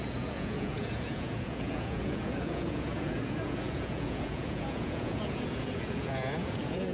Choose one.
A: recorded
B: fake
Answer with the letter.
B